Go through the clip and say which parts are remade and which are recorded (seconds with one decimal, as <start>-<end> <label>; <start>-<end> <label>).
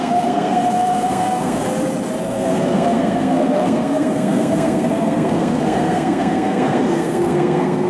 0.0-1.6 remade; 1.6-2.2 recorded; 2.2-7.9 remade